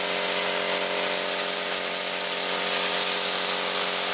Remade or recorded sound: recorded